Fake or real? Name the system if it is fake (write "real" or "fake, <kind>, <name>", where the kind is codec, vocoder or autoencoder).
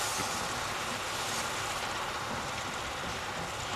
real